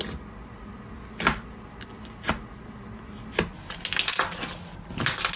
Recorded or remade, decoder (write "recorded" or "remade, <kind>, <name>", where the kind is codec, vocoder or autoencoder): recorded